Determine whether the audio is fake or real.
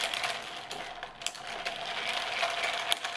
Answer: real